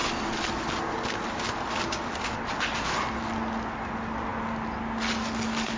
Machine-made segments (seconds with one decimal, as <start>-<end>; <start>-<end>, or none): none